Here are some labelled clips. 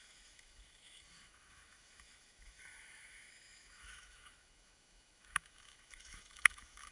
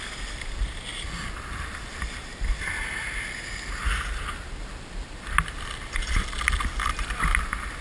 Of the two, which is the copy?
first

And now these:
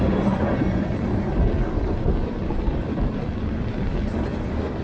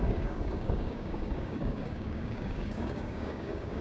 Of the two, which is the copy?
second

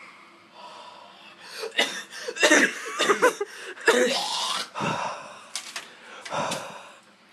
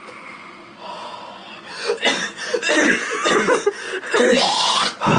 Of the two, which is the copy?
second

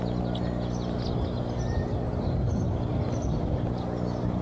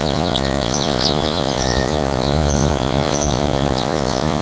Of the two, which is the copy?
second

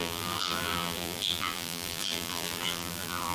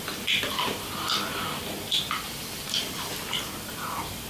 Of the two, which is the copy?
first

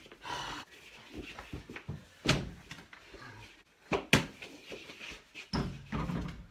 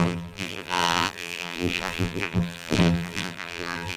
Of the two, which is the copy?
second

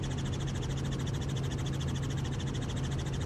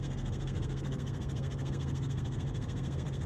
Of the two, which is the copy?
second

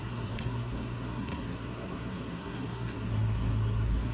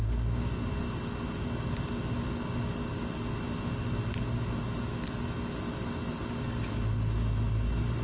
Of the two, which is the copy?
first